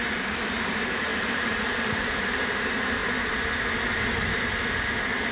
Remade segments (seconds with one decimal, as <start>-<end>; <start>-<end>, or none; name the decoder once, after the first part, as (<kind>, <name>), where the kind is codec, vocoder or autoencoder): 0.0-3.0 (vocoder, BigVGAN v2)